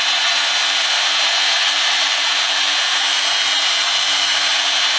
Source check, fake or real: real